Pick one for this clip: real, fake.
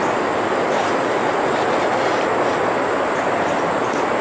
real